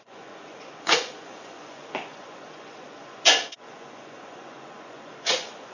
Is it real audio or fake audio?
fake